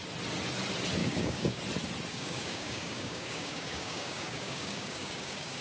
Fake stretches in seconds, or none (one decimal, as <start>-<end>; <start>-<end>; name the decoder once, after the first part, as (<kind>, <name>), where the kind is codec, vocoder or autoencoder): 1.0-1.6 (codec, DAC); 2.1-5.6